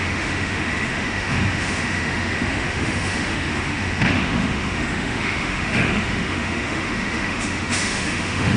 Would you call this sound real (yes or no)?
no